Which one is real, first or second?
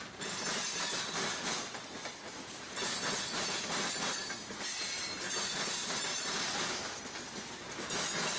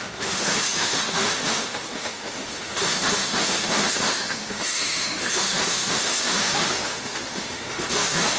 first